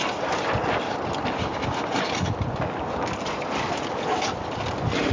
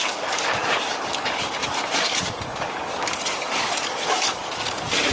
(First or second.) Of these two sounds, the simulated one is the second